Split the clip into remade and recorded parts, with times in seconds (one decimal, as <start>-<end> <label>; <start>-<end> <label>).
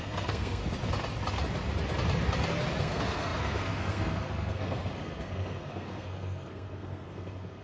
0.0-0.6 remade; 0.6-2.8 recorded; 2.8-7.6 remade